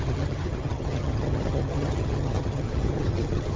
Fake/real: fake